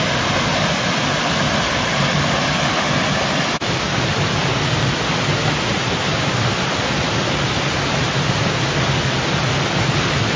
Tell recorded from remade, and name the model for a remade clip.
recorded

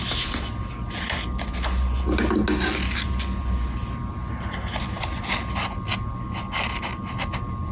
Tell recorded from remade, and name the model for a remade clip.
recorded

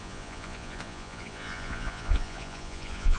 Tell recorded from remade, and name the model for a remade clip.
remade, vocoder, Vocos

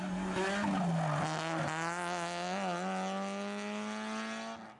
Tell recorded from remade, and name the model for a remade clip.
recorded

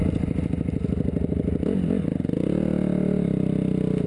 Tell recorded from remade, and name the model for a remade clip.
recorded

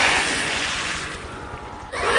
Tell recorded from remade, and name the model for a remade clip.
remade, vocoder, Vocos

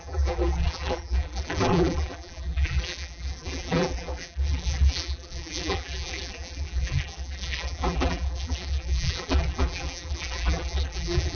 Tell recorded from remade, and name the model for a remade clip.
remade, vocoder, BigVGAN v2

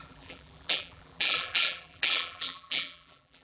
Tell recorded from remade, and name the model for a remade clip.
remade, vocoder, BigVGAN v2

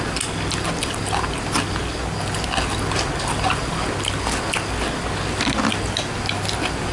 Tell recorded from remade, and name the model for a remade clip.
recorded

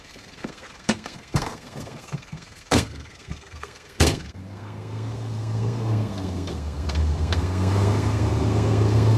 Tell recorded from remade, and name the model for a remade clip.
remade, codec, SNAC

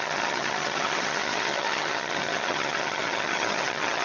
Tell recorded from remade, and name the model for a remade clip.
remade, vocoder, HiFi-GAN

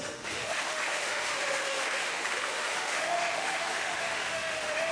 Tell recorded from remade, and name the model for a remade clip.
remade, autoencoder, DAC-VAE